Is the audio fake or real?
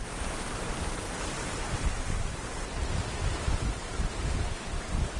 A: real